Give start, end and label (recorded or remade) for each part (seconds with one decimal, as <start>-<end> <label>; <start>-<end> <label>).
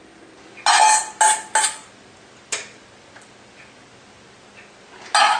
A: 0.0-5.4 recorded